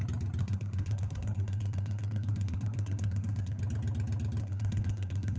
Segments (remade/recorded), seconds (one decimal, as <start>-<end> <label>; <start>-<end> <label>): 0.0-0.4 recorded; 0.4-3.6 remade; 3.6-4.4 recorded; 4.4-5.4 remade